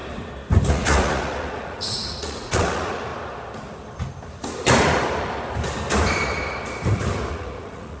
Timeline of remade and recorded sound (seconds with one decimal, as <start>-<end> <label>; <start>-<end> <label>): 0.0-0.7 recorded; 0.7-3.1 remade; 3.1-7.3 recorded; 7.3-8.0 remade